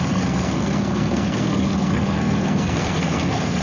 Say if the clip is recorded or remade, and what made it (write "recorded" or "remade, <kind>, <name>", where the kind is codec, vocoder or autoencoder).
remade, codec, SNAC